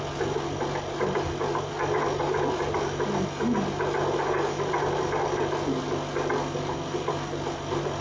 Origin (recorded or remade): recorded